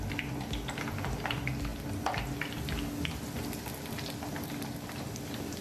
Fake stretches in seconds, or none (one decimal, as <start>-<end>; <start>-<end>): none

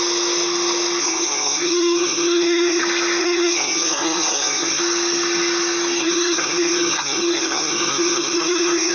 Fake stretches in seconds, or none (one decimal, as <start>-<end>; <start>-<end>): 1.0-2.8; 3.2-4.8; 6.0-8.9

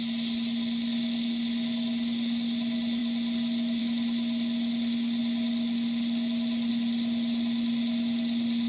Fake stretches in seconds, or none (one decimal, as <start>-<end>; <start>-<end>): none

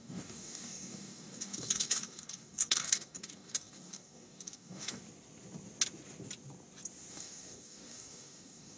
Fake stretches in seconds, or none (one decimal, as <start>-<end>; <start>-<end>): 0.0-5.0; 7.1-8.8

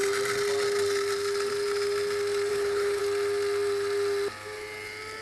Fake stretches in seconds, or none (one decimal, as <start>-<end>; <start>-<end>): 2.5-3.0

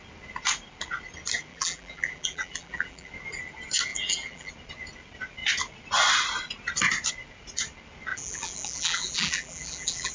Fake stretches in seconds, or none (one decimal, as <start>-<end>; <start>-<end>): 1.5-3.1; 3.9-4.5; 8.1-10.1